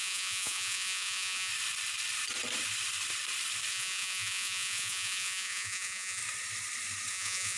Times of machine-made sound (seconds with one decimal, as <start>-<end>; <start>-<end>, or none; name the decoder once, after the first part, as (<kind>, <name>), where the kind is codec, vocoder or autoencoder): 0.0-1.5 (vocoder, Vocos); 3.7-6.2; 7.1-7.6